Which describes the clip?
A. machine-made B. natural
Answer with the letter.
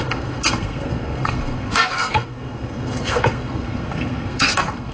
A